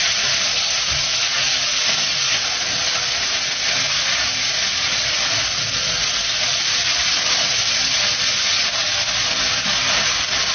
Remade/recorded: recorded